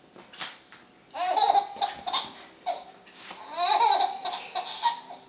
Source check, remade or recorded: recorded